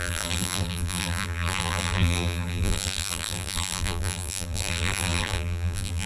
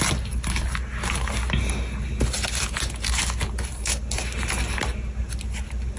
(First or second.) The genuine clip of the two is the second